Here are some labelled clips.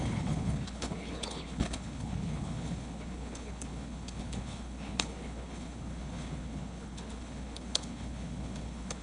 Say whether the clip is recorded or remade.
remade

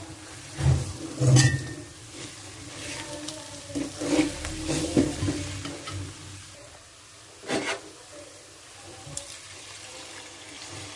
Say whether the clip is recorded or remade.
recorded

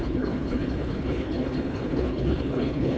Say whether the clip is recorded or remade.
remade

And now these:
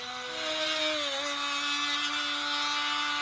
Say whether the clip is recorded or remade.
recorded